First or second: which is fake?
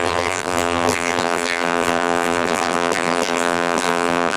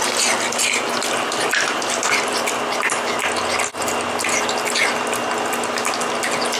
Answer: first